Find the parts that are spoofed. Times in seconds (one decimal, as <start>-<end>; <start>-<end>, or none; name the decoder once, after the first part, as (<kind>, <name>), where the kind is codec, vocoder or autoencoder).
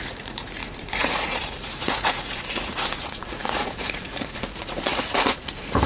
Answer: 0.0-5.9 (vocoder, Vocos)